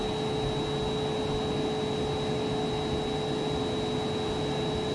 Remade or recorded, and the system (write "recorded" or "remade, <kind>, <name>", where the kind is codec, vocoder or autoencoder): recorded